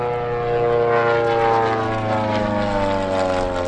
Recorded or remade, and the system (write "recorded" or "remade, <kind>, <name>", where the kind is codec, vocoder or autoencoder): recorded